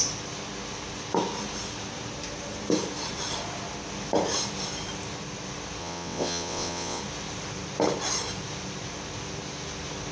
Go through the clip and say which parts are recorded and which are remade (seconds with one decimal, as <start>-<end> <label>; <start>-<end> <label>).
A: 0.0-5.8 recorded; 5.8-7.0 remade; 7.0-10.1 recorded